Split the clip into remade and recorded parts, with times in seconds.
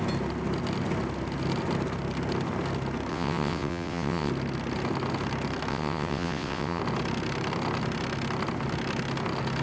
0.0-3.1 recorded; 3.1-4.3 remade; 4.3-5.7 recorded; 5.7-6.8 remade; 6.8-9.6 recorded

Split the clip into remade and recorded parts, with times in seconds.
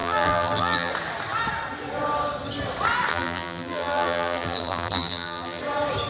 0.0-0.9 remade; 0.9-3.1 recorded; 3.1-5.6 remade; 5.6-6.1 recorded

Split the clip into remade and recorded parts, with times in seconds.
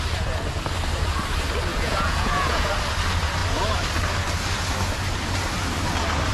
0.0-1.7 recorded; 1.7-2.7 remade; 2.7-6.3 recorded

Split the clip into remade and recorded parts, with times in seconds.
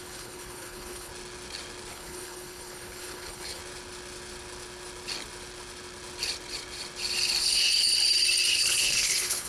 0.0-1.1 remade; 1.1-1.9 recorded; 1.9-3.6 remade; 3.6-7.4 recorded; 7.4-7.9 remade; 7.9-8.5 recorded; 8.5-9.5 remade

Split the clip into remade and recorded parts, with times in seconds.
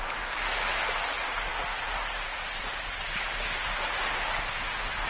0.0-5.1 recorded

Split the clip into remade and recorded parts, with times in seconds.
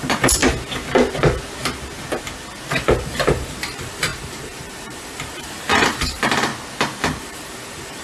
0.0-0.4 remade; 0.4-2.8 recorded; 2.8-6.5 remade; 6.5-7.2 recorded; 7.2-8.0 remade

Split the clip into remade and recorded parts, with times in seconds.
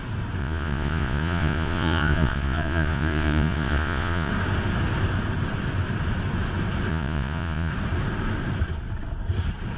0.0-0.4 recorded; 0.4-4.3 remade; 4.3-6.9 recorded; 6.9-7.7 remade; 7.7-9.8 recorded